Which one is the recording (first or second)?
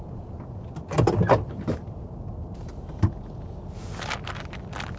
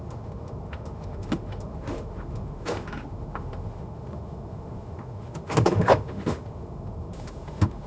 first